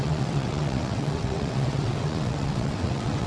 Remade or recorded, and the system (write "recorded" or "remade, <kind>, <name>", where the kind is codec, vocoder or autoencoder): remade, vocoder, WaveNeXt